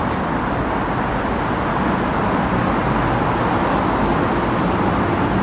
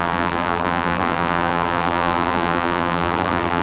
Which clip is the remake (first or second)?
second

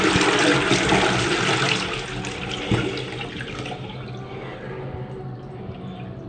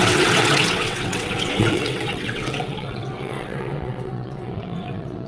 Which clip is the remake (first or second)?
second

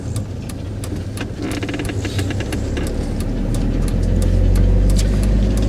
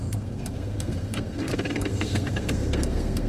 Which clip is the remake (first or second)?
second